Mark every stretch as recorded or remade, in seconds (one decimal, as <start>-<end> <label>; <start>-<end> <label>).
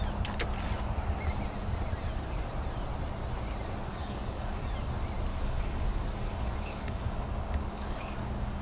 0.0-4.0 recorded; 4.0-4.6 remade; 4.6-5.3 recorded; 5.3-8.6 remade